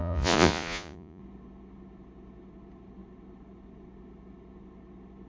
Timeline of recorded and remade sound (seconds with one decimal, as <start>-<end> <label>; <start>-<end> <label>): 0.0-1.2 remade; 1.2-5.3 recorded